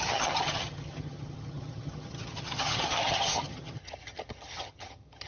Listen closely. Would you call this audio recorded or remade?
remade